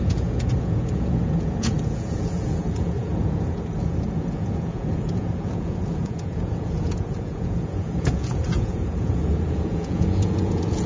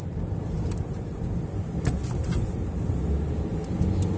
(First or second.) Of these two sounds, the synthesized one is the first